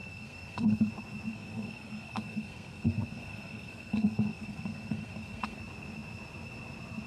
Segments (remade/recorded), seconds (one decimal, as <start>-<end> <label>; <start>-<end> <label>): 0.0-0.9 remade; 0.9-1.3 recorded; 1.3-5.6 remade; 5.6-7.1 recorded